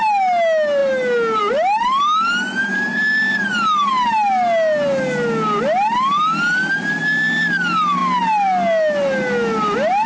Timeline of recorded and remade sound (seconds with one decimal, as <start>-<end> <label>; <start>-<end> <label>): 0.0-2.6 recorded; 2.6-3.9 remade; 3.9-10.1 recorded